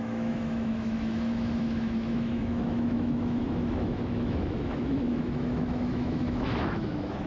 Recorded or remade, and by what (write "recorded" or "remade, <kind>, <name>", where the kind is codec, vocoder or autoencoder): remade, autoencoder, DAC-VAE